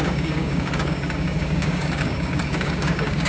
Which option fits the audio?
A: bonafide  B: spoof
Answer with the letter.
B